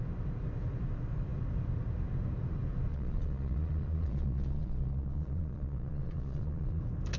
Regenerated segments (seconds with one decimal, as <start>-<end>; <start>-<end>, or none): 2.9-6.8